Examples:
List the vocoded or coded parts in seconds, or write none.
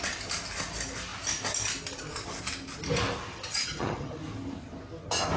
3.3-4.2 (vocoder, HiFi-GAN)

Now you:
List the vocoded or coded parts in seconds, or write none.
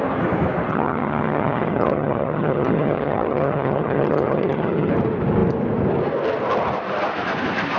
0.7-4.9 (vocoder, HiFi-GAN)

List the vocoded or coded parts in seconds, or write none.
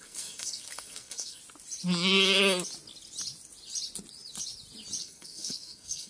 0.0-1.4 (codec, SNAC); 5.0-6.1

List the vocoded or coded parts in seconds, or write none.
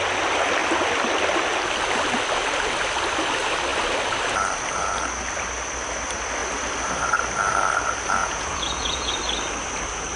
8.2-9.1 (vocoder, Vocos)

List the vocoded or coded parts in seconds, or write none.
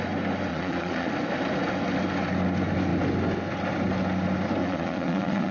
0.5-1.1 (vocoder, Vocos); 4.6-5.5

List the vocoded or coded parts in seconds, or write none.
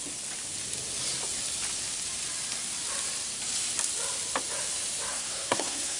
5.1-6.0 (codec, SNAC)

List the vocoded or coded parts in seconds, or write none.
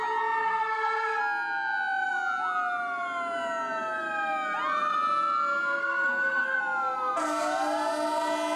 0.4-1.2 (codec, SNAC); 5.8-6.6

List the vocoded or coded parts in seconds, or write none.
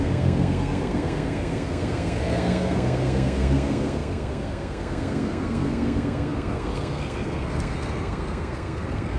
0.0-9.2 (codec, SNAC)